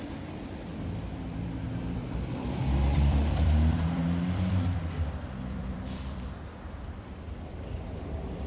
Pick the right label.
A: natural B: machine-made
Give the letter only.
B